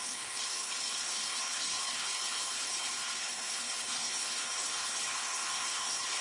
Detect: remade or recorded remade